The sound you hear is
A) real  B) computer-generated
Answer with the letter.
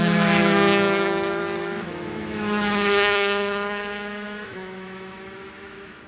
B